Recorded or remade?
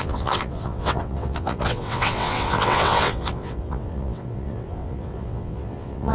remade